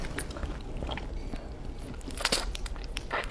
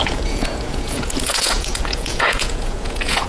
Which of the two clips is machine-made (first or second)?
second